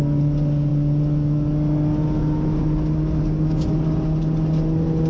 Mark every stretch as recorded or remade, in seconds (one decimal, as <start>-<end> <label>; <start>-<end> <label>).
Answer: 0.0-5.1 recorded